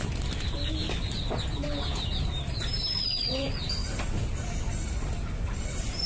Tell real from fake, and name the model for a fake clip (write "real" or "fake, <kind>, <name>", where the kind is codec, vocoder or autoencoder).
real